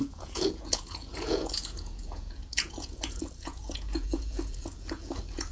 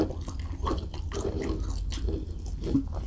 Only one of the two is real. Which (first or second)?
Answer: second